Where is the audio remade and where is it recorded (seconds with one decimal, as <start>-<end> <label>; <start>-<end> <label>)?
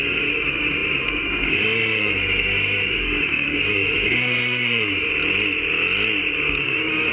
0.0-5.1 remade; 5.1-6.6 recorded; 6.6-7.1 remade